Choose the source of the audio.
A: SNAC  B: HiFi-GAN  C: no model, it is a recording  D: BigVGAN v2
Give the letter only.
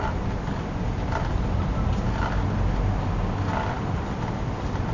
C